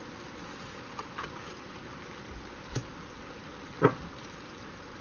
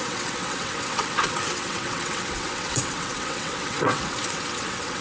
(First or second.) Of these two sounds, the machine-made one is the second